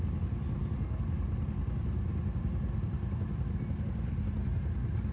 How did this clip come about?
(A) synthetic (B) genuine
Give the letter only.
B